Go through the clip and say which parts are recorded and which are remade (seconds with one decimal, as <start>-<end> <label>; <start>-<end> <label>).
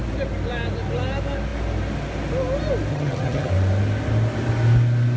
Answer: 0.0-2.9 recorded; 2.9-3.5 remade; 3.5-5.2 recorded